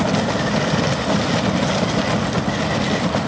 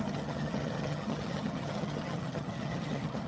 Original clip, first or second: first